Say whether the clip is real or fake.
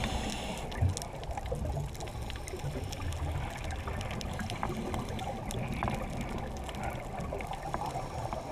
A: real